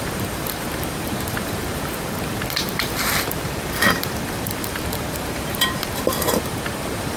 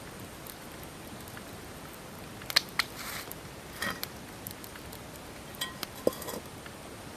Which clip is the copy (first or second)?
first